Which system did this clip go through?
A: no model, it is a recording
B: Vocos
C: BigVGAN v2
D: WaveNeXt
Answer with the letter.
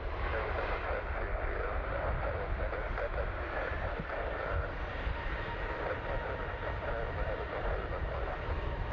A